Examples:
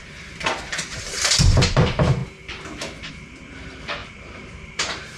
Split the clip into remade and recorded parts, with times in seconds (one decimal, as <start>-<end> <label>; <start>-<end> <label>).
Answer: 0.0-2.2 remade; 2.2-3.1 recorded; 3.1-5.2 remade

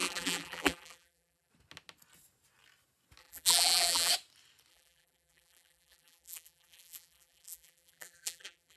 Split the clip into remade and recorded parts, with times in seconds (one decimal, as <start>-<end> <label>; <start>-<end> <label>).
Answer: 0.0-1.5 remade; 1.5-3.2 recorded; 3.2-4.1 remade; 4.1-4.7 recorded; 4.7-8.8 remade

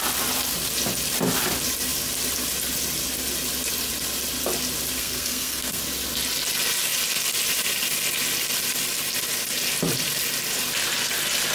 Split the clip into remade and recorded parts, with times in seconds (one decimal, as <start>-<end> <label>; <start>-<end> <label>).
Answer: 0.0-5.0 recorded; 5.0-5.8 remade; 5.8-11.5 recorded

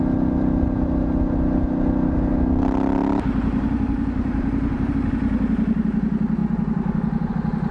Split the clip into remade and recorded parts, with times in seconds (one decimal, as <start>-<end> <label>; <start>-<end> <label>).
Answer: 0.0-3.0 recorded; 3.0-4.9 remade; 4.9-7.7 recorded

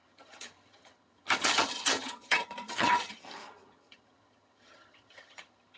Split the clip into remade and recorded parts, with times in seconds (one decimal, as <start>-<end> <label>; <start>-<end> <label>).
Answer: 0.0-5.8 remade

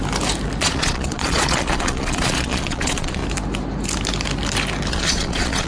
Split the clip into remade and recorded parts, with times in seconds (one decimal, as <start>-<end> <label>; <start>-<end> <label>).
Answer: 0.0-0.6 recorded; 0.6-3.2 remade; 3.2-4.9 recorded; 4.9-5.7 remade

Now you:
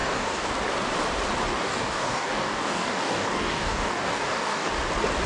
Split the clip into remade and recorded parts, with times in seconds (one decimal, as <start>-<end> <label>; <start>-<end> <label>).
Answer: 0.0-0.5 remade; 0.5-1.5 recorded; 1.5-4.7 remade; 4.7-5.3 recorded

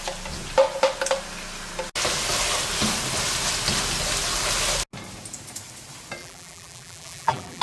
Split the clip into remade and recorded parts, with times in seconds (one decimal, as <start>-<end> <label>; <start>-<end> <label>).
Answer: 0.0-6.2 recorded; 6.2-7.6 remade